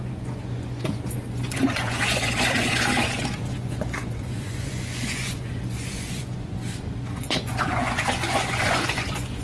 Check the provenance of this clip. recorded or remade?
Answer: remade